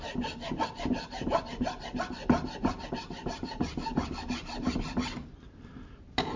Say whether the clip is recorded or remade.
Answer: recorded